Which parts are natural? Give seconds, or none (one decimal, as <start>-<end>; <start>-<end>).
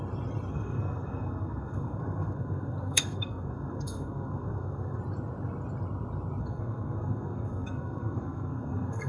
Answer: 0.0-0.5; 5.0-6.4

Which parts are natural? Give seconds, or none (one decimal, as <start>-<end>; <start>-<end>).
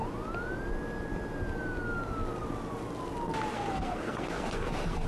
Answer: 0.0-3.5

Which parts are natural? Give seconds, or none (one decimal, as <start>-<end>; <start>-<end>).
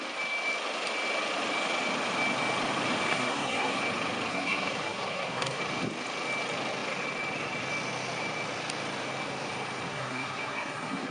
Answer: 0.0-3.1; 3.8-4.3; 5.6-9.9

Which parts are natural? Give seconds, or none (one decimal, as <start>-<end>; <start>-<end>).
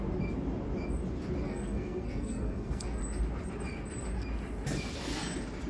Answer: 0.0-1.4; 3.0-5.7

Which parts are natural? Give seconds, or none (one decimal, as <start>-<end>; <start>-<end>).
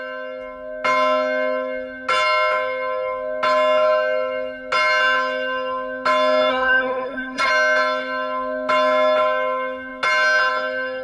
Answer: 0.0-6.5; 7.5-11.0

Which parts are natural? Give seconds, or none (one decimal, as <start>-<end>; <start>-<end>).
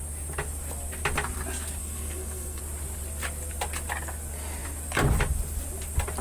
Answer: 0.0-1.8; 2.6-6.2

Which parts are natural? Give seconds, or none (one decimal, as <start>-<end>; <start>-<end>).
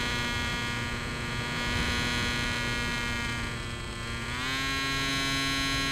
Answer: 0.0-5.9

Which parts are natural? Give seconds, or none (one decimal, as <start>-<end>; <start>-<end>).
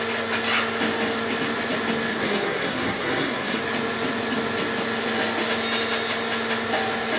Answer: 0.0-2.1; 3.6-7.2